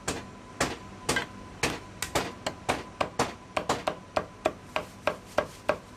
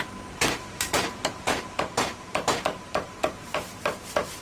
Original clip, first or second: first